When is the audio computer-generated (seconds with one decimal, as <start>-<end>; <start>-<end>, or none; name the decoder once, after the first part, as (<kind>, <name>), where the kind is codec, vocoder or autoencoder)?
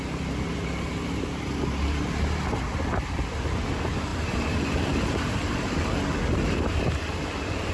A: 4.1-6.9 (vocoder, BigVGAN v2)